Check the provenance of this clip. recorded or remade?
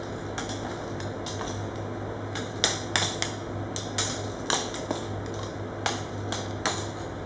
recorded